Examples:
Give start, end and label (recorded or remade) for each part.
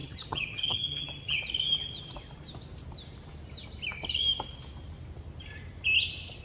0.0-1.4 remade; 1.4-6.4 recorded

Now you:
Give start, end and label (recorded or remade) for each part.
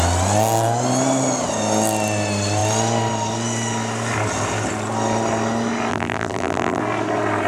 0.0-5.9 recorded; 5.9-6.8 remade; 6.8-7.5 recorded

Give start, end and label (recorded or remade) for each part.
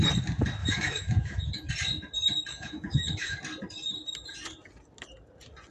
0.0-0.6 recorded; 0.6-1.7 remade; 1.7-2.5 recorded; 2.5-3.4 remade; 3.4-5.7 recorded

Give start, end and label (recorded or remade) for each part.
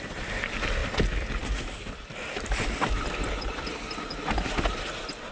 0.0-5.3 recorded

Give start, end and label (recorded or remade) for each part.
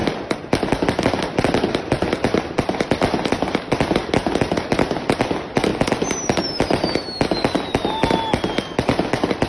0.0-5.7 remade; 5.7-9.5 recorded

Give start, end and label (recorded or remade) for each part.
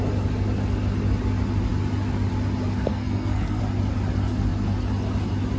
0.0-2.9 recorded; 2.9-3.6 remade; 3.6-5.6 recorded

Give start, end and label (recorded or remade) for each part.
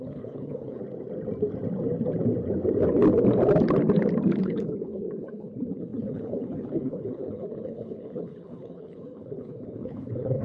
0.0-0.8 remade; 0.8-4.4 recorded; 4.4-10.4 remade